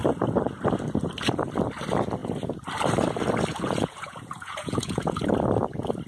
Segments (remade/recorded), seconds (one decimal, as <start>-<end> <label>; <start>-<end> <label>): 0.0-3.5 recorded; 3.5-5.2 remade; 5.2-6.1 recorded